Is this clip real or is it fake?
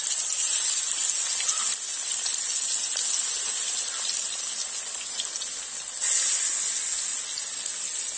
real